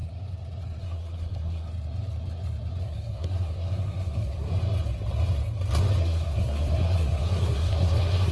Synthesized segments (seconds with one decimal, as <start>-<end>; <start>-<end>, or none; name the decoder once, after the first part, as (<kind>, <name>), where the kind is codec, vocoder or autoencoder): 0.8-1.7 (codec, SNAC); 2.8-4.5; 6.0-8.3